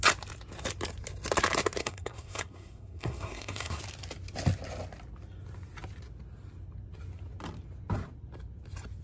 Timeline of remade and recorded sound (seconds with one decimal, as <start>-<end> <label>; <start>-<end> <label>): 0.0-1.8 recorded; 1.8-3.8 remade; 3.8-9.0 recorded